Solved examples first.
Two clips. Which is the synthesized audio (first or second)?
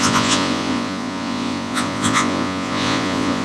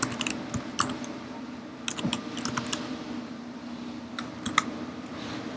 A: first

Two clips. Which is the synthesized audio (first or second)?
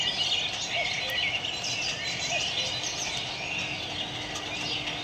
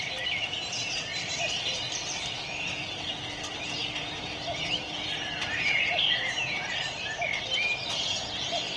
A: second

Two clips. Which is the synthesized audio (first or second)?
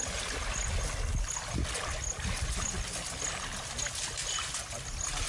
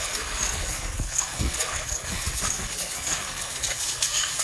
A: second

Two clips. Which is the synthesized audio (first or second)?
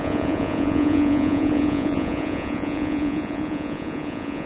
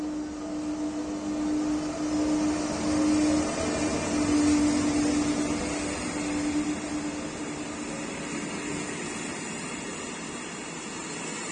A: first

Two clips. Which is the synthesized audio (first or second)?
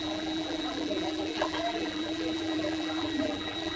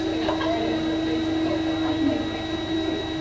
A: first